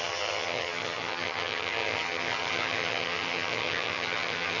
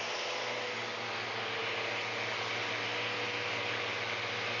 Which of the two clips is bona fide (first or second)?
second